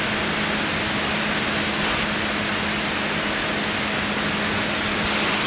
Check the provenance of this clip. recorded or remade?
recorded